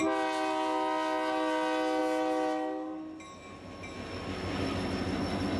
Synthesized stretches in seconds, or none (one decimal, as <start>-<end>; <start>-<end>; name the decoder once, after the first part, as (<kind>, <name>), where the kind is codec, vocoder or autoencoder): none

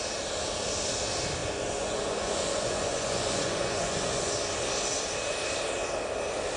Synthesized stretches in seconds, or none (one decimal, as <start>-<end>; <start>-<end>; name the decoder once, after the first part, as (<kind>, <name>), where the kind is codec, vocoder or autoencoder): 1.4-4.3 (vocoder, Vocos)

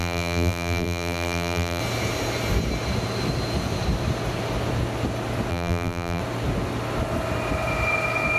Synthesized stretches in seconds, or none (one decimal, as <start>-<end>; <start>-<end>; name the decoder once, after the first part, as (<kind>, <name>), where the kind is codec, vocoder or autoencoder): 0.0-1.8 (vocoder, BigVGAN v2); 5.5-6.2

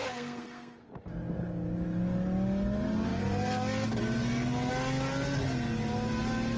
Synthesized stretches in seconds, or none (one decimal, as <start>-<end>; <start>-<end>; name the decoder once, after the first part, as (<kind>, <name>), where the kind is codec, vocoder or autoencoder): 0.0-0.9 (codec, SNAC)

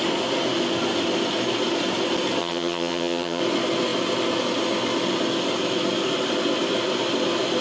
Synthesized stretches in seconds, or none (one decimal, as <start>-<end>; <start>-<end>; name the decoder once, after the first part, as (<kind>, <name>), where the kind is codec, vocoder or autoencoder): 2.4-3.4 (vocoder, HiFi-GAN)

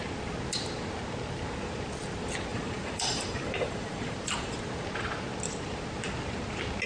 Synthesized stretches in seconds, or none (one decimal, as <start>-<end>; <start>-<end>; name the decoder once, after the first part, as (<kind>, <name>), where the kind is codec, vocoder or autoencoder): 2.5-4.6 (vocoder, BigVGAN v2)